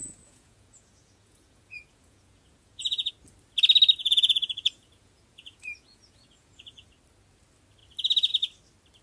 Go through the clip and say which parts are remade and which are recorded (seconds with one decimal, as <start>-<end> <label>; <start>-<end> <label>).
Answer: 0.0-3.1 remade; 3.1-4.0 recorded; 4.0-6.9 remade; 6.9-9.0 recorded